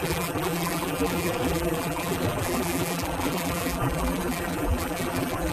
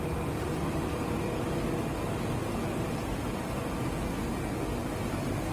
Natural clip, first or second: second